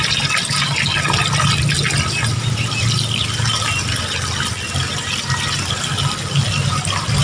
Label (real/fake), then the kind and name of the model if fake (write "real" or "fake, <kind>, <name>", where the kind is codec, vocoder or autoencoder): real